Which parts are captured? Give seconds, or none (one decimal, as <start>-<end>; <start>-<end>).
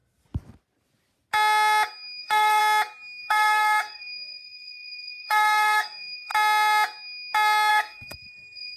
0.0-2.2; 2.6-3.2; 6.3-7.7